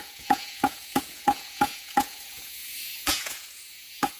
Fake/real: fake